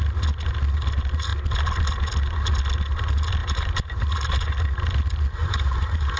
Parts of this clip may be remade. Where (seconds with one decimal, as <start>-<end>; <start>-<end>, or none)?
3.4-4.4; 5.4-6.2